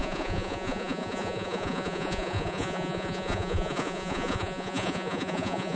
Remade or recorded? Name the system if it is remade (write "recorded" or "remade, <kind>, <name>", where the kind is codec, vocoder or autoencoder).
remade, vocoder, Vocos